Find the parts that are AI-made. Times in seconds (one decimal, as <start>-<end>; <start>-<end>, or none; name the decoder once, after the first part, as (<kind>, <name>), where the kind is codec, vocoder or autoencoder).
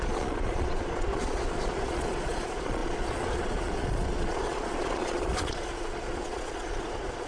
0.0-7.3 (vocoder, Vocos)